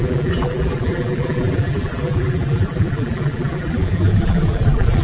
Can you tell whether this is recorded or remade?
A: remade